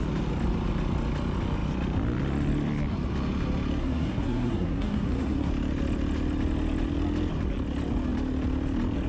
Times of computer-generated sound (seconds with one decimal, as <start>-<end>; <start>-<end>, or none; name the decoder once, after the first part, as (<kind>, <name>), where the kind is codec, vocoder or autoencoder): 3.8-5.5 (codec, SNAC)